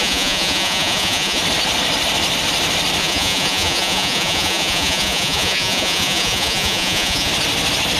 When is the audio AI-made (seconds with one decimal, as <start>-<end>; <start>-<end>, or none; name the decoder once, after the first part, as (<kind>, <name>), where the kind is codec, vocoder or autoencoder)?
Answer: 0.0-1.4 (vocoder, Vocos); 3.0-7.3

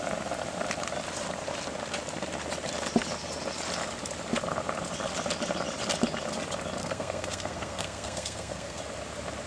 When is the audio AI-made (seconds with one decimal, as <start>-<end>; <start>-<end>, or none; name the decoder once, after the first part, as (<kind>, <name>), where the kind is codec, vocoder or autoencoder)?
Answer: 6.8-8.8 (codec, SNAC)

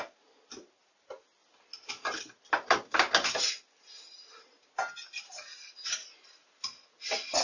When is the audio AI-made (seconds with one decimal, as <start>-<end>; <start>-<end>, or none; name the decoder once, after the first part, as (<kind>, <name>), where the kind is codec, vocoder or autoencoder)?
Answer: none

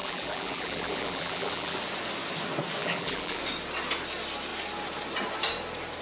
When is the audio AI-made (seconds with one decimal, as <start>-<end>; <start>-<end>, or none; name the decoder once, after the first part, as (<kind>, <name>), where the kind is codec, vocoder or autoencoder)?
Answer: 0.0-1.8 (vocoder, BigVGAN v2); 2.8-3.4

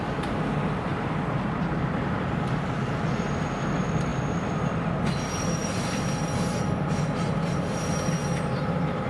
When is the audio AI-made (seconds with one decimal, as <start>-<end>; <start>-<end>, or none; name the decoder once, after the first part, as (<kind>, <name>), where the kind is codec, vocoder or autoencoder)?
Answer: none

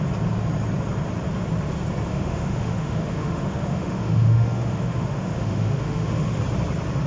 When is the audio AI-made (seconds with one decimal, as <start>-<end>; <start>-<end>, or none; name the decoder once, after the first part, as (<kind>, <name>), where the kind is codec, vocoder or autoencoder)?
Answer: 2.1-6.4 (autoencoder, DAC-VAE)

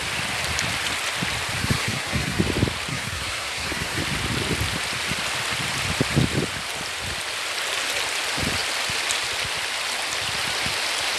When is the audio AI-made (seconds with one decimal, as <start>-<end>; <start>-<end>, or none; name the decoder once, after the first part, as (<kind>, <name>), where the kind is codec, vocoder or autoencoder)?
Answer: 1.6-2.4 (codec, SNAC); 2.9-4.0

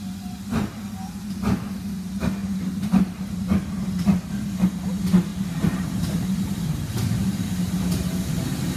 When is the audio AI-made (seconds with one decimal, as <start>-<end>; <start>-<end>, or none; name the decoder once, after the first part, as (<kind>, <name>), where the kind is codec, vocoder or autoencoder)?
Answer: 2.4-3.4 (vocoder, BigVGAN v2); 5.3-8.8